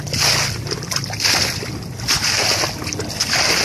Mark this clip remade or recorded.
recorded